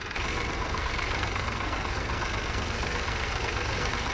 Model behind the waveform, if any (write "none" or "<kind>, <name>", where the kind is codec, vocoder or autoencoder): codec, SNAC